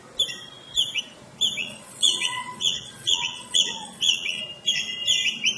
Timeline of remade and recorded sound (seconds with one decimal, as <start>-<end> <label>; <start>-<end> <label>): 0.0-1.6 recorded; 1.6-4.4 remade; 4.4-5.6 recorded